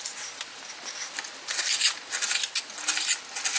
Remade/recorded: recorded